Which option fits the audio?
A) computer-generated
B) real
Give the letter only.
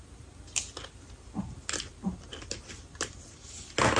B